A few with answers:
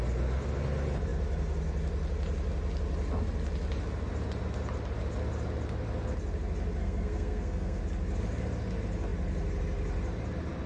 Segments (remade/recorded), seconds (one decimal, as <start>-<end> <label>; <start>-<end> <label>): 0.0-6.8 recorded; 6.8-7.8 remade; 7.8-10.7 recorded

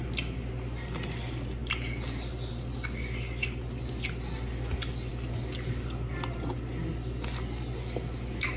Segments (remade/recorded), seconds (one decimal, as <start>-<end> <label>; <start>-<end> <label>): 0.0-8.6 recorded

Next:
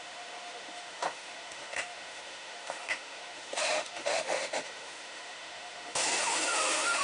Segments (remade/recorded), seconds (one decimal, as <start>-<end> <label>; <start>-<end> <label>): 0.0-7.0 remade